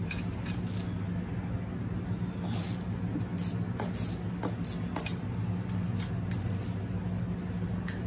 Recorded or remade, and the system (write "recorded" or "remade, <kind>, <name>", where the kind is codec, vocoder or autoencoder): recorded